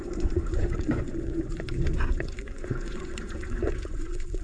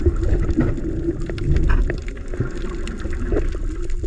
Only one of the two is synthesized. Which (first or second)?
first